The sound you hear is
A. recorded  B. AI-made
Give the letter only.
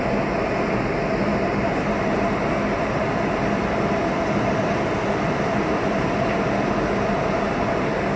A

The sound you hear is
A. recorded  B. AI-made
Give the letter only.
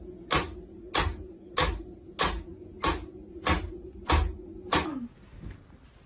A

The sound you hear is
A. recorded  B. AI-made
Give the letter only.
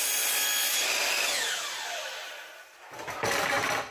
A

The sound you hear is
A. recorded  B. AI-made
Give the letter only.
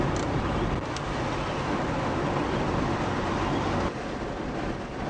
A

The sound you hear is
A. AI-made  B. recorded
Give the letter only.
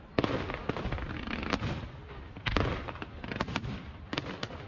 B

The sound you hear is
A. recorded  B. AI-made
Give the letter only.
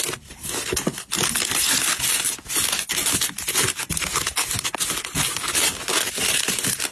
A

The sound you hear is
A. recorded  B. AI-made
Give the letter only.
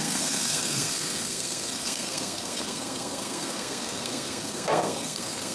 B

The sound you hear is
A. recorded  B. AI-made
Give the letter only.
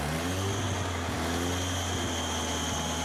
A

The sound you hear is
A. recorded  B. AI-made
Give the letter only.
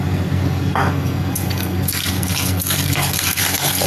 B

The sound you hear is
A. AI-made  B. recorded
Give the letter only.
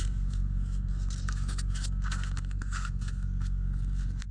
A